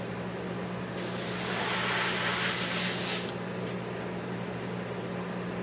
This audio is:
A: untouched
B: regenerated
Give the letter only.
A